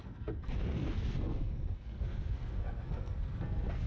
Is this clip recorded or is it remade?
remade